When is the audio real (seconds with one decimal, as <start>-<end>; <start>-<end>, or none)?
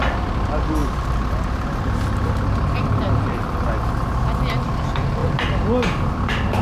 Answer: 0.0-6.6